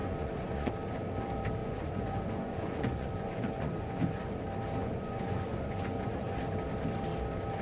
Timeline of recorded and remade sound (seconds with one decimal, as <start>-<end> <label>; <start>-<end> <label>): 0.0-0.7 remade; 0.7-1.6 recorded; 1.6-4.2 remade; 4.2-4.8 recorded; 4.8-6.4 remade; 6.4-7.6 recorded